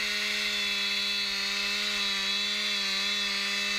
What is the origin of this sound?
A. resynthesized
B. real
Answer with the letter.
B